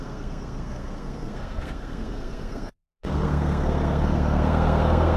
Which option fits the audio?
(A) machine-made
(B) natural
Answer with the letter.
A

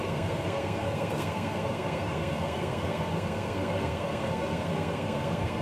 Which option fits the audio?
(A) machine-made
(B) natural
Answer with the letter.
A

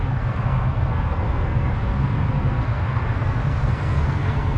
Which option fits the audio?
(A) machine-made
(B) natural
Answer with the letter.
A